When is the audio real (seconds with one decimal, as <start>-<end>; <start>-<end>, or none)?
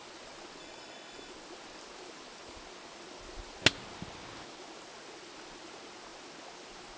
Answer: 0.0-0.6; 1.3-7.0